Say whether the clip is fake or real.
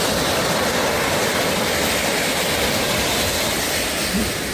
real